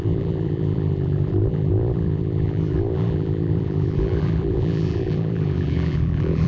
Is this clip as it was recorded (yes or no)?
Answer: no